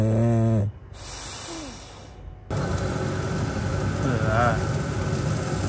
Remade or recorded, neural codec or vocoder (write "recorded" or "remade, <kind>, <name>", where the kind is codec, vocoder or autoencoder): recorded